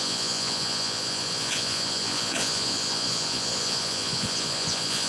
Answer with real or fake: fake